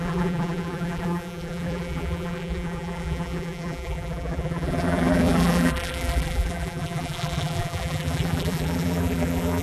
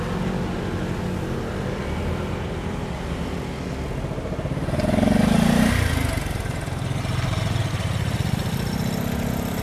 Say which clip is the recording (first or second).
second